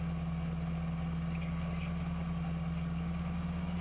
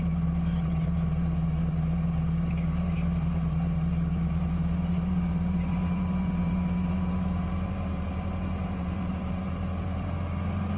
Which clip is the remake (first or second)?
second